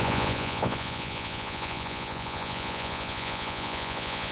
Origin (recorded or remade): remade